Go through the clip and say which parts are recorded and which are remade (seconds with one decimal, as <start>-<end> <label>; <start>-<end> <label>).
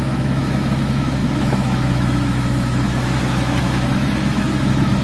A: 0.0-5.0 remade